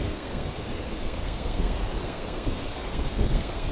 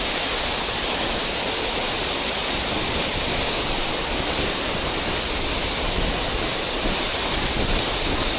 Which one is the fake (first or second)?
first